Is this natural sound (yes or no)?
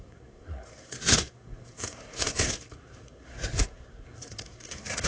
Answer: no